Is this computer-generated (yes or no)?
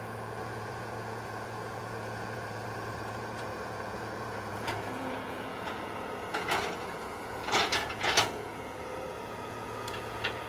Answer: yes